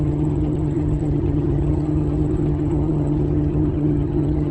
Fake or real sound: fake